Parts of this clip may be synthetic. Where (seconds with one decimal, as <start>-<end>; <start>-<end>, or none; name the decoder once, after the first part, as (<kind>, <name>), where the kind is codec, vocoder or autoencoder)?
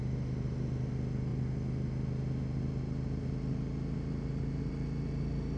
none